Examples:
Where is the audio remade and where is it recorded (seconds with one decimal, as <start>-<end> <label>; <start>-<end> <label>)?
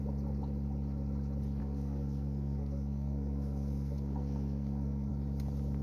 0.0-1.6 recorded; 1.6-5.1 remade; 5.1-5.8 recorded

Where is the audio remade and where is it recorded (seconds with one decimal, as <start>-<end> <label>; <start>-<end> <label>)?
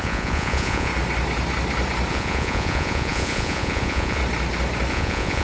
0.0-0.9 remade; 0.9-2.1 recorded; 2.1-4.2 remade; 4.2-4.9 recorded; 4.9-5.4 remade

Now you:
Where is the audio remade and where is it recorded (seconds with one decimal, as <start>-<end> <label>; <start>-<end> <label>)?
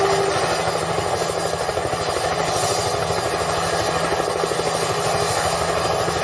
0.0-6.2 recorded